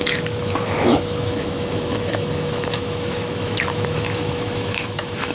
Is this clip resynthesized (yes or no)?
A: yes